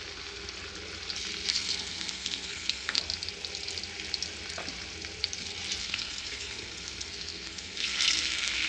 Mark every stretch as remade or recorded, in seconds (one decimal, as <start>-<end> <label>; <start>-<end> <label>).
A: 0.0-1.5 recorded; 1.5-3.0 remade; 3.0-5.8 recorded; 5.8-8.7 remade

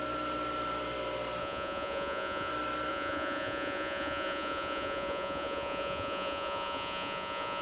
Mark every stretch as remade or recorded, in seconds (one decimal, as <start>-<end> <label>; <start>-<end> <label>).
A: 0.0-1.4 recorded; 1.4-2.5 remade; 2.5-2.9 recorded; 2.9-7.6 remade

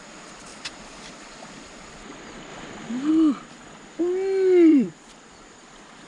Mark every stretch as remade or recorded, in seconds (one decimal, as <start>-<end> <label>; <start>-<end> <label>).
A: 0.0-0.5 recorded; 0.5-1.9 remade; 1.9-4.7 recorded; 4.7-6.1 remade

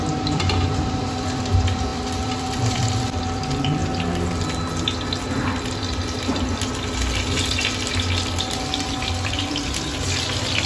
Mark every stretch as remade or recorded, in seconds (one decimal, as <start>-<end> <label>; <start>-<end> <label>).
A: 0.0-3.8 remade; 3.8-8.6 recorded; 8.6-10.7 remade

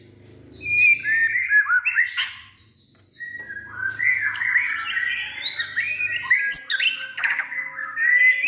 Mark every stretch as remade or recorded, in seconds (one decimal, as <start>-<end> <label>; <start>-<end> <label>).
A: 0.0-8.5 recorded

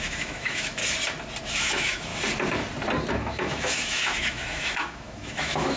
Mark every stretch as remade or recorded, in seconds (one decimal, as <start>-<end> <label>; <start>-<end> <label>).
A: 0.0-0.8 remade; 0.8-1.4 recorded; 1.4-2.1 remade; 2.1-3.1 recorded; 3.1-5.8 remade

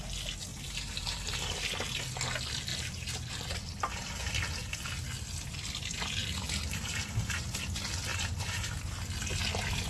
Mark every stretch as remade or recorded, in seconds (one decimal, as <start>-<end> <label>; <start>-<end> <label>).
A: 0.0-0.5 recorded; 0.5-2.0 remade; 2.0-2.7 recorded; 2.7-4.3 remade; 4.3-6.2 recorded; 6.2-7.5 remade; 7.5-8.1 recorded; 8.1-8.7 remade; 8.7-9.9 recorded